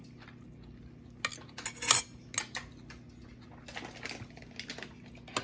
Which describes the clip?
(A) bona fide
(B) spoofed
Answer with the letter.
A